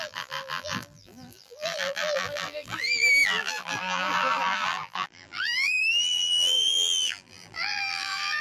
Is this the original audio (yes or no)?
no